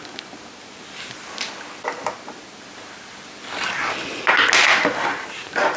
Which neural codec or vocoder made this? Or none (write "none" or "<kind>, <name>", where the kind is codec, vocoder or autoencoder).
none